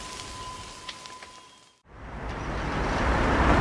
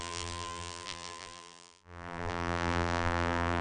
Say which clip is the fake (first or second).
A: second